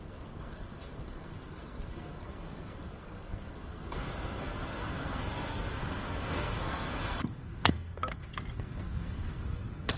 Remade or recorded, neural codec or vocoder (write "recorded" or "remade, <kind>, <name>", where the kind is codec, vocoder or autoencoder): remade, codec, SNAC